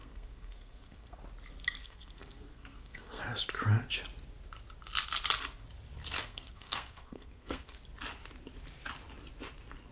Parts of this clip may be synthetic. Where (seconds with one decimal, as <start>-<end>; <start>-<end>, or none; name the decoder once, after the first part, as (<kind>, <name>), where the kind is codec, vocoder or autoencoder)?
0.0-1.2 (codec, SNAC); 1.8-3.2; 6.2-7.8